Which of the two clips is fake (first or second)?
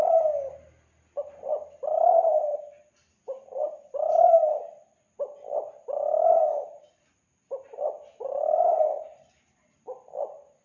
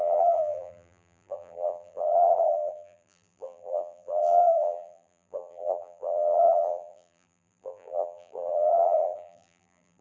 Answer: second